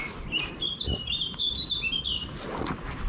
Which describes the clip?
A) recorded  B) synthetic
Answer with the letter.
B